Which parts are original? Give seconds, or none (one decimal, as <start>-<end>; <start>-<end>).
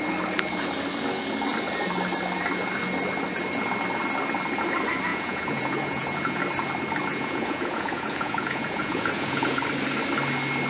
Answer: 0.0-5.1; 6.4-7.1; 9.6-10.7